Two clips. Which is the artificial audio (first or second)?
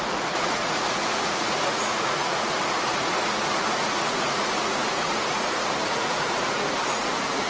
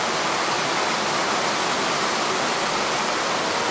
first